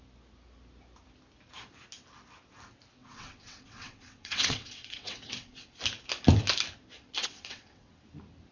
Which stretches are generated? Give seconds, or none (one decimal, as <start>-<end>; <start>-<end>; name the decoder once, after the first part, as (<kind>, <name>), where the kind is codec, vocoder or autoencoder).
3.0-5.8 (vocoder, WaveNeXt); 7.2-7.9